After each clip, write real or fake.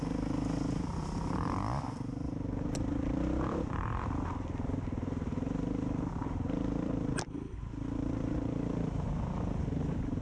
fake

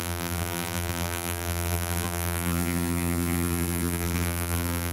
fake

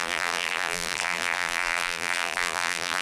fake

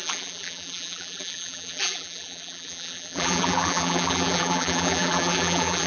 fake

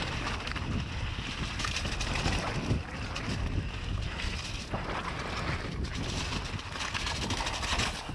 real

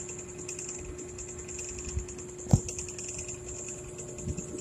real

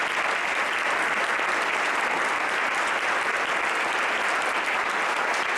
real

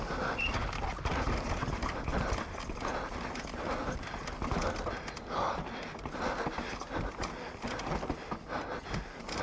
real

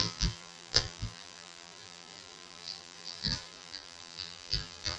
fake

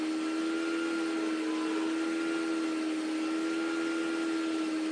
real